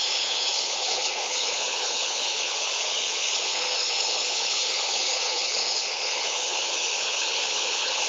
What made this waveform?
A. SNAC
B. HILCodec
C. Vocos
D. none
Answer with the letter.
B